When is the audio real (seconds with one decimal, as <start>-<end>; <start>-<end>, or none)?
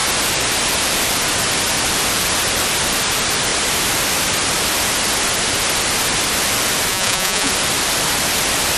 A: 0.0-6.9; 7.5-8.8